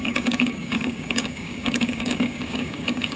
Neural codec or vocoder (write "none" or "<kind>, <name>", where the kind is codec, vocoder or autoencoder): codec, DAC